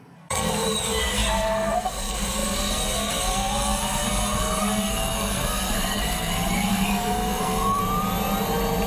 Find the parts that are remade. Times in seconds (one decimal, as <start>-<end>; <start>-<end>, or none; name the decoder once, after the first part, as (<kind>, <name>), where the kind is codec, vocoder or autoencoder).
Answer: 0.0-7.8 (codec, SNAC)